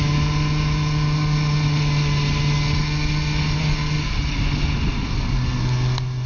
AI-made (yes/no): no